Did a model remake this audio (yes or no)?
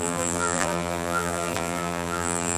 yes